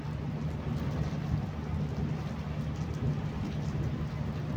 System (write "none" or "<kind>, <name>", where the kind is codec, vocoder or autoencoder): none